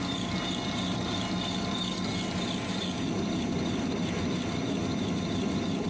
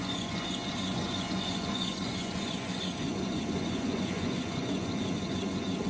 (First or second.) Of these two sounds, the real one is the first